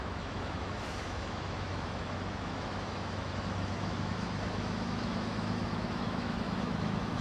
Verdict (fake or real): fake